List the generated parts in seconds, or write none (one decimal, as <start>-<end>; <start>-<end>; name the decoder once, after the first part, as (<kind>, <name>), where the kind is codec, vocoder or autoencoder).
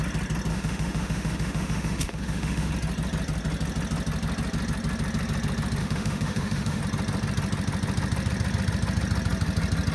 0.5-2.7 (autoencoder, DAC-VAE); 5.8-6.8